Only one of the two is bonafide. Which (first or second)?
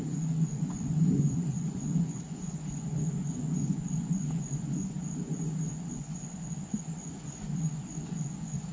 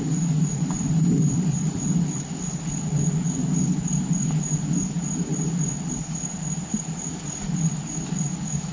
second